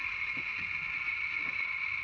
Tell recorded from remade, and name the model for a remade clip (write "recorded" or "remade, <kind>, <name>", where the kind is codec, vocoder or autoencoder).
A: recorded